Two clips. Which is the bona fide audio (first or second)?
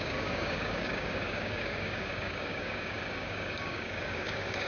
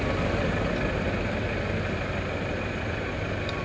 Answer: second